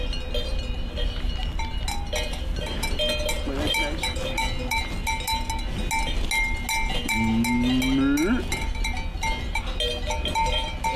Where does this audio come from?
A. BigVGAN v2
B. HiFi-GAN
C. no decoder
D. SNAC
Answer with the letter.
C